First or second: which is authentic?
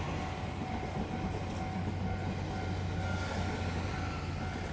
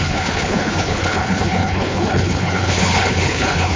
first